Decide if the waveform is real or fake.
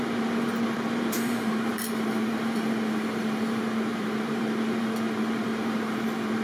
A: fake